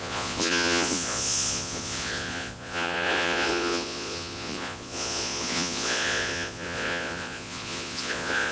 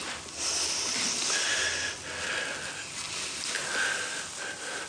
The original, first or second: second